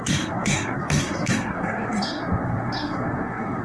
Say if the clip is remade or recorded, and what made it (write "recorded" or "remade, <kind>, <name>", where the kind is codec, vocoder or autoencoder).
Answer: remade, codec, SNAC